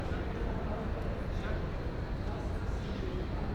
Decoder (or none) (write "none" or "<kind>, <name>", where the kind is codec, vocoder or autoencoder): none